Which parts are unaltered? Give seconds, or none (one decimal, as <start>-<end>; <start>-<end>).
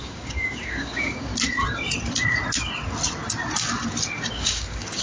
1.3-4.3